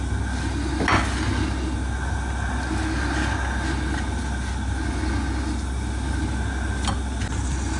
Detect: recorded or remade recorded